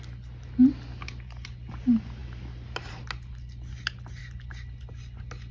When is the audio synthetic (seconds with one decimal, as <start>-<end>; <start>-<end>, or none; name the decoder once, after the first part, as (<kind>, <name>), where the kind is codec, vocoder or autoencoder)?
none